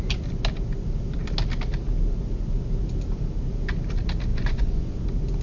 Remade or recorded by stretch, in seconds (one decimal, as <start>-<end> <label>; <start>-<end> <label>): 0.0-4.3 recorded; 4.3-5.0 remade; 5.0-5.4 recorded